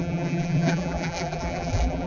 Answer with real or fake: fake